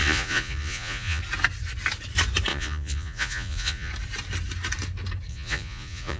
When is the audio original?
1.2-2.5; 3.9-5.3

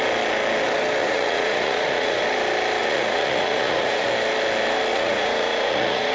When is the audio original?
0.0-1.0; 2.2-2.8; 4.1-4.9